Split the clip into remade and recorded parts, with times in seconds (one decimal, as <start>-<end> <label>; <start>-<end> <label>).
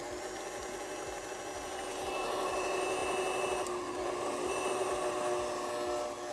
0.0-1.9 recorded; 1.9-2.5 remade; 2.5-6.3 recorded